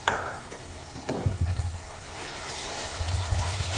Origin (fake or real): fake